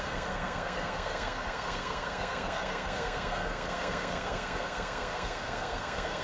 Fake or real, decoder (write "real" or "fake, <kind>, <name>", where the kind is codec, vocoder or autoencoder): fake, codec, SNAC